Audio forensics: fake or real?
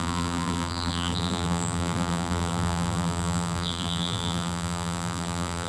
fake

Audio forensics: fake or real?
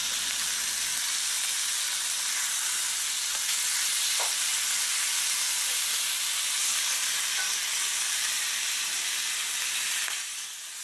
real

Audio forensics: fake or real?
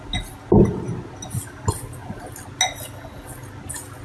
real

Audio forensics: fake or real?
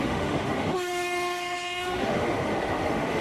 fake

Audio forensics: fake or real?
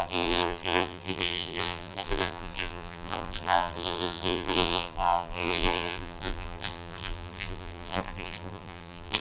fake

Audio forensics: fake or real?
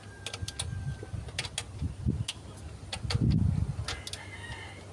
real